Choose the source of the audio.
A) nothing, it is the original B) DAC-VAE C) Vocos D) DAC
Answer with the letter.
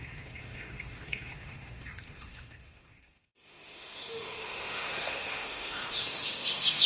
B